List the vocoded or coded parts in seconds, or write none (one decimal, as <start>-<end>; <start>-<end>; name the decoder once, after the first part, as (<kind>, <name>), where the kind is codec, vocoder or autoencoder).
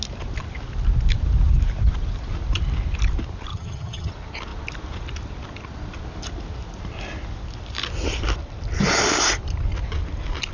3.5-4.1 (vocoder, HiFi-GAN)